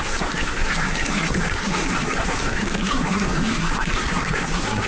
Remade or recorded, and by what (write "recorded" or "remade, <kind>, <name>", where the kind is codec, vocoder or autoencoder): remade, codec, SNAC